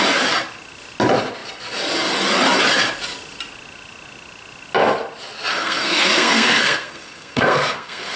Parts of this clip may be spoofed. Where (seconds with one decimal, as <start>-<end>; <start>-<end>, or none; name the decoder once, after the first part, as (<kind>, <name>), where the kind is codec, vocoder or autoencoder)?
5.5-8.2 (codec, SNAC)